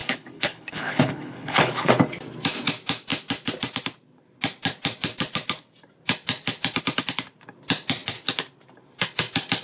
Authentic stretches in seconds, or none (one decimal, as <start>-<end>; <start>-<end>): 1.9-9.6